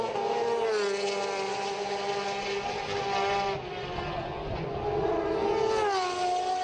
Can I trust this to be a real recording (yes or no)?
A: yes